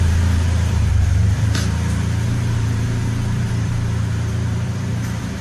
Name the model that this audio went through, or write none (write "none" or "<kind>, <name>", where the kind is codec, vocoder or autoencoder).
vocoder, BigVGAN v2